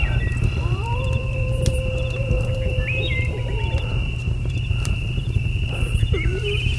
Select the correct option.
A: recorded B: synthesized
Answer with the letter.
B